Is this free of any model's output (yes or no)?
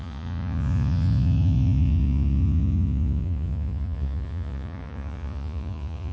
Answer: no